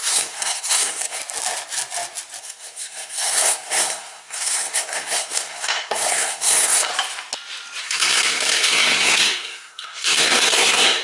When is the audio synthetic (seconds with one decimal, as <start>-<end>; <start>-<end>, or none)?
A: 0.0-1.2; 2.4-6.9; 7.8-11.0